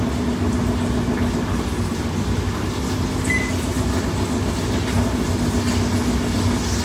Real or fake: real